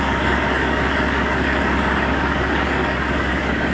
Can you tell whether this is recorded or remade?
remade